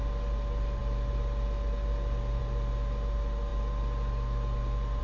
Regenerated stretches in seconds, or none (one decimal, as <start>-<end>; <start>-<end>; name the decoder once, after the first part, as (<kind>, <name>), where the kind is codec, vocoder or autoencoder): none